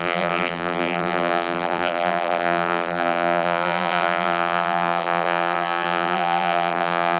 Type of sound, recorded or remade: remade